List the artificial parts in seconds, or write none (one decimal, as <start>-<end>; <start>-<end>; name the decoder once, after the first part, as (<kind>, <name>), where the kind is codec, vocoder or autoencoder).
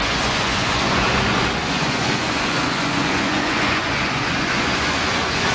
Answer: 0.0-5.5 (vocoder, Vocos)